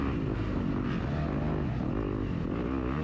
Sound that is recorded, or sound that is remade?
recorded